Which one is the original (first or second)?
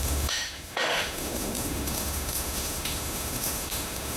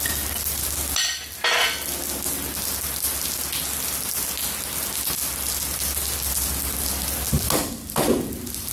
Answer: second